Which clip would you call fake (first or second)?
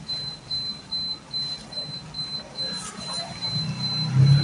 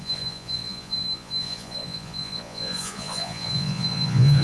second